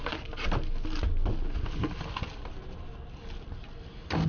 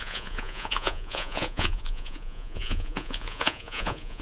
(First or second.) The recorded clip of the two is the first